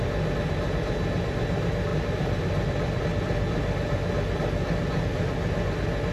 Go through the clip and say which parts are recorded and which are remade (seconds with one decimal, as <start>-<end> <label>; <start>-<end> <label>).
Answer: 0.0-6.1 recorded